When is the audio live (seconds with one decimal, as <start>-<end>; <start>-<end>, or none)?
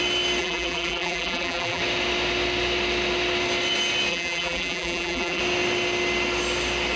0.0-0.4; 1.8-4.1; 5.4-7.0